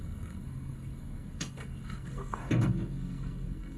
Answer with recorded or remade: remade